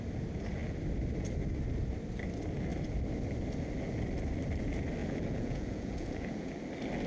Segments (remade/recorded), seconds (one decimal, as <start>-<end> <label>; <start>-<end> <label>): 0.0-5.0 recorded; 5.0-6.5 remade; 6.5-7.1 recorded